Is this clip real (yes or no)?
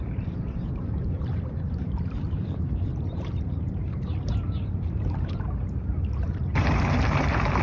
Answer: no